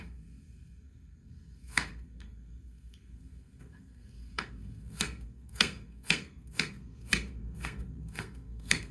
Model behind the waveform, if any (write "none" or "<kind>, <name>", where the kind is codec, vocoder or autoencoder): codec, SNAC